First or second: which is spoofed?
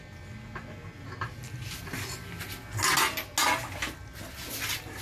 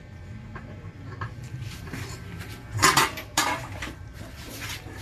second